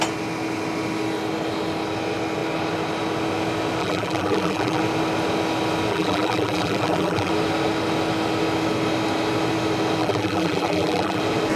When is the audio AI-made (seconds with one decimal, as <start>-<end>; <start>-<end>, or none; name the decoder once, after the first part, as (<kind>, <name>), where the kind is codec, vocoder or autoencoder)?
3.8-4.8 (vocoder, BigVGAN v2); 5.9-7.3; 10.0-11.2